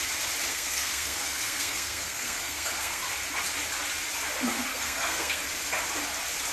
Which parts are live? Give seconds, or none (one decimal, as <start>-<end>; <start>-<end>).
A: 0.0-0.5; 3.0-4.7; 5.4-6.5